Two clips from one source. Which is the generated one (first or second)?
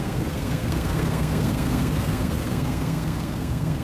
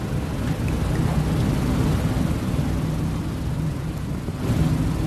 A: first